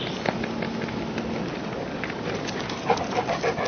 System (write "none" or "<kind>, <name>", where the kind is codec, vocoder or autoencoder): none